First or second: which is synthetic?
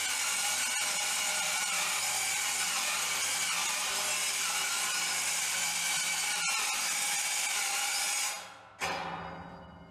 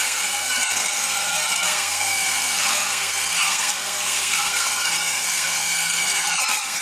second